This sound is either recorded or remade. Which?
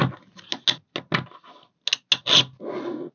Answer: recorded